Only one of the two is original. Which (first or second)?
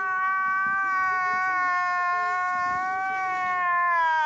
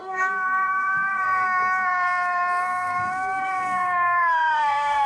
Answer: first